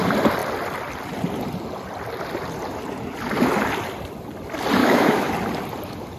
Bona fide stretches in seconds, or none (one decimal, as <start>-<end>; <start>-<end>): 0.0-4.8; 5.3-6.2